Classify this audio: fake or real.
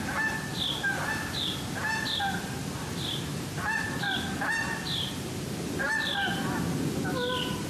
real